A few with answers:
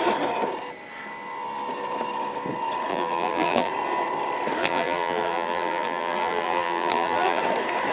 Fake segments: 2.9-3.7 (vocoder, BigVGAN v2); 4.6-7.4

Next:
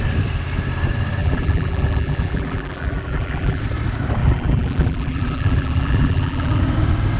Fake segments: 1.2-3.6 (vocoder, BigVGAN v2); 4.2-6.6

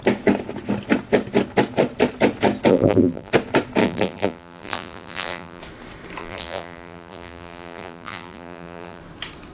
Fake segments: 2.7-3.3 (vocoder, BigVGAN v2); 3.8-5.6; 6.2-9.0

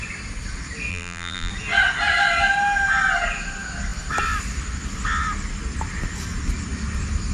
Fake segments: 0.9-1.5 (vocoder, BigVGAN v2)

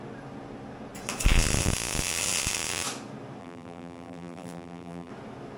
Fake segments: 3.4-5.1 (vocoder, BigVGAN v2)

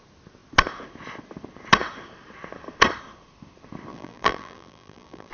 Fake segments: 3.9-5.3 (vocoder, BigVGAN v2)